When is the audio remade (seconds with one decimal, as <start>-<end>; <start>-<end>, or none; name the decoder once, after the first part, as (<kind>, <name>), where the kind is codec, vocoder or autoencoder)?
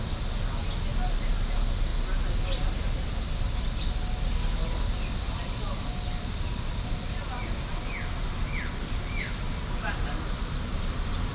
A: none